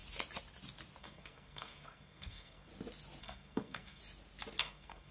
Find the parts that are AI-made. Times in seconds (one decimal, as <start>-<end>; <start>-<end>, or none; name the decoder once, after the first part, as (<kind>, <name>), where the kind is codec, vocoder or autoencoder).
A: 1.0-2.7 (codec, SNAC); 3.2-4.0; 4.6-5.1